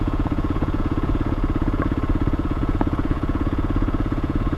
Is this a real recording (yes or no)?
no